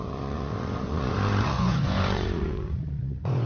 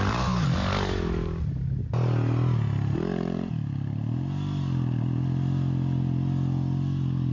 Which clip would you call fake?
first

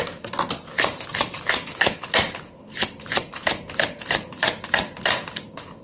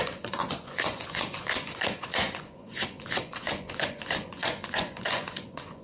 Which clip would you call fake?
second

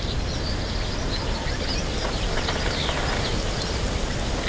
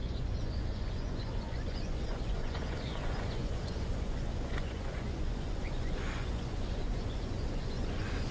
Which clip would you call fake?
second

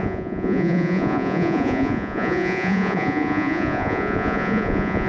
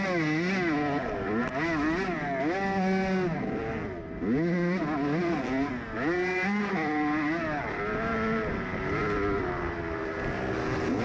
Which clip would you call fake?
first